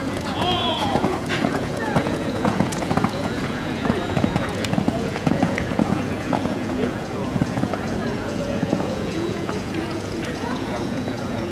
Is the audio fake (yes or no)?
yes